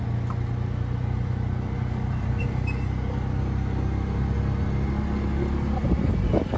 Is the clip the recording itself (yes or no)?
yes